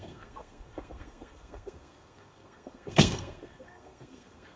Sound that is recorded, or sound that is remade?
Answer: remade